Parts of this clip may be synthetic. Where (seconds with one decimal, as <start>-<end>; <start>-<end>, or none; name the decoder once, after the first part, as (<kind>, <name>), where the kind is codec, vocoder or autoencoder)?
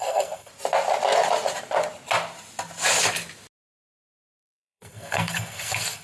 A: 0.0-0.5 (codec, SNAC); 4.1-6.0